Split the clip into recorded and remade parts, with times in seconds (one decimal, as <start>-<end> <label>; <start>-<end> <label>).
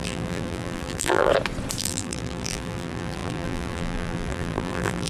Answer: 0.0-1.3 remade; 1.3-1.8 recorded; 1.8-5.1 remade